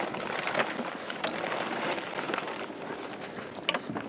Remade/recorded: recorded